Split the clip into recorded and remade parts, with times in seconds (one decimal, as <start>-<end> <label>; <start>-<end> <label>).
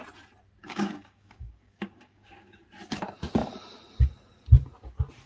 0.0-0.6 recorded; 0.6-2.6 remade; 2.6-5.3 recorded